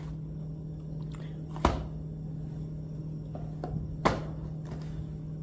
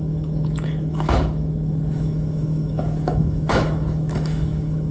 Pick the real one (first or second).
first